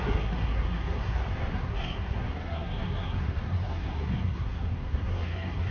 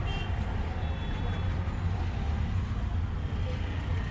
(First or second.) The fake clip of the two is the first